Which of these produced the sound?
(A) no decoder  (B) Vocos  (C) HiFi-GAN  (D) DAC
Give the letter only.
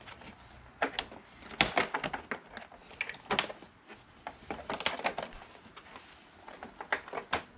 A